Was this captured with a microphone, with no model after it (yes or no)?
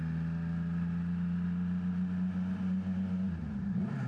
yes